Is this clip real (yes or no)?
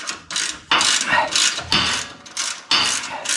yes